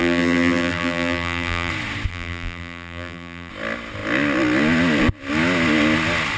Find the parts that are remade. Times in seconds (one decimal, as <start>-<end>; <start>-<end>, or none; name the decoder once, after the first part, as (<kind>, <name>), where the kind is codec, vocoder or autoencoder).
0.0-1.7 (vocoder, BigVGAN v2); 2.1-3.5